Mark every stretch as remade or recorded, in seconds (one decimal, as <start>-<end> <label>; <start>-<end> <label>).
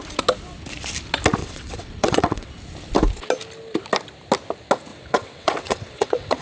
0.0-1.4 recorded; 1.4-2.5 remade; 2.5-4.9 recorded; 4.9-6.4 remade